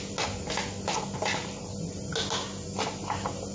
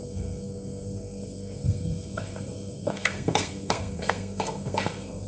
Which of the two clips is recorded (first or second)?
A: first